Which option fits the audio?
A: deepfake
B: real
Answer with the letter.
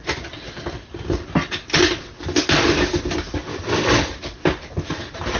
B